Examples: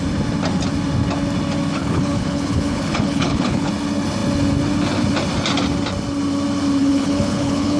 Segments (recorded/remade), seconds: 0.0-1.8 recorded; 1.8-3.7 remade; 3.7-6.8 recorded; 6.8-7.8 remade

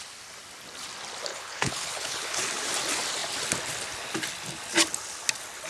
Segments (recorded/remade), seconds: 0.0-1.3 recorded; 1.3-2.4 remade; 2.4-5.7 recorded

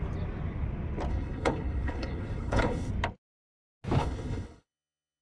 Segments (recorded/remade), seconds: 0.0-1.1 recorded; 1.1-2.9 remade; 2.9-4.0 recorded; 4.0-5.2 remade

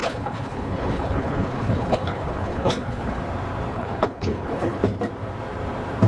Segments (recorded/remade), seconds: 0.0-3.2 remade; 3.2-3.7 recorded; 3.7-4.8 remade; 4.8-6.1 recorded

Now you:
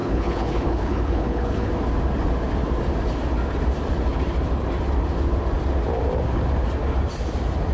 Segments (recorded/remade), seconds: 0.0-1.7 remade; 1.7-7.7 recorded